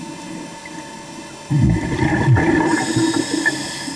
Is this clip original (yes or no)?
yes